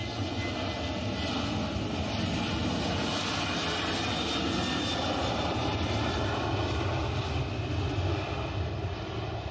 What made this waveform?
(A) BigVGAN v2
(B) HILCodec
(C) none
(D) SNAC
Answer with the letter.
C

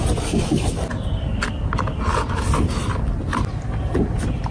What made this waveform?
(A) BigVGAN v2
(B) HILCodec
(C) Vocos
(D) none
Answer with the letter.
D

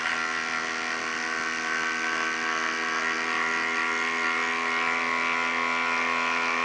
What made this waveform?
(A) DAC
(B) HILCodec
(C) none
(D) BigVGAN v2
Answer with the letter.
C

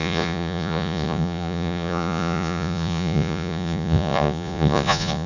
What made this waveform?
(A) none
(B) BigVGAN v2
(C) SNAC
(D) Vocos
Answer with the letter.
D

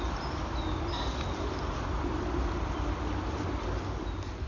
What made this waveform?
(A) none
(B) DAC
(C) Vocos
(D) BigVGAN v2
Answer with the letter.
A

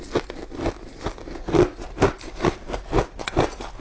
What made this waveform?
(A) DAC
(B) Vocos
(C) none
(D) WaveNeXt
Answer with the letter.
C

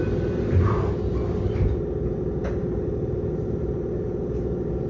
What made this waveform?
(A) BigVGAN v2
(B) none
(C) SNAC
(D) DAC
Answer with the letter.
B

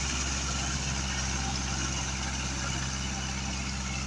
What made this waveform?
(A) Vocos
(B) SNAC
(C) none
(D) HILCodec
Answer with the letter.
C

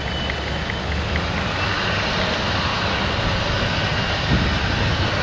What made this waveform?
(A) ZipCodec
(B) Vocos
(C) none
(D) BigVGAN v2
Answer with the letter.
C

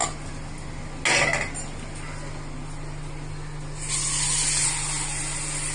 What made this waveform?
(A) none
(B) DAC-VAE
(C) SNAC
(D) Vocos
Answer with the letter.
A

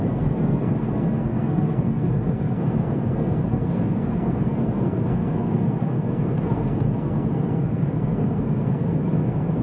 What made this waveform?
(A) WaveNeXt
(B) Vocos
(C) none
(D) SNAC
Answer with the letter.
D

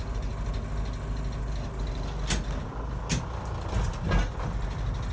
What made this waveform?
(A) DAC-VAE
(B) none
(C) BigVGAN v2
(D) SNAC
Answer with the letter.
B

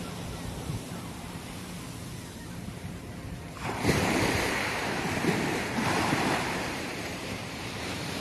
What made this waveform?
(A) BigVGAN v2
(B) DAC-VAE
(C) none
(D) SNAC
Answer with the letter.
A